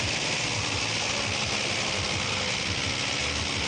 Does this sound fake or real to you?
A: real